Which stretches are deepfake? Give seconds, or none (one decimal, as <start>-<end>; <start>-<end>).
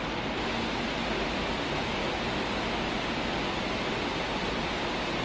none